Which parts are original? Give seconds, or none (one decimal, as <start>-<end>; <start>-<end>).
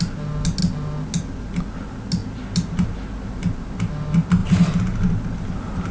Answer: 0.0-5.9